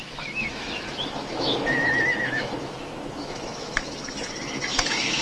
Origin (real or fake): fake